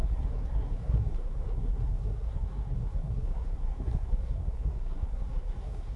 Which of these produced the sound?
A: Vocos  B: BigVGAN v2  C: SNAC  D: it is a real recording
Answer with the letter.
C